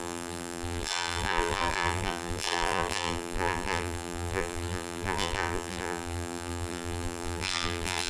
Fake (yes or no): yes